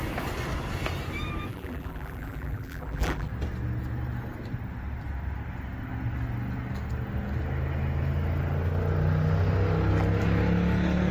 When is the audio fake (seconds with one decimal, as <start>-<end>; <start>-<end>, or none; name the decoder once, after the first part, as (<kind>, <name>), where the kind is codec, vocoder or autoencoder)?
1.5-3.3 (vocoder, BigVGAN v2)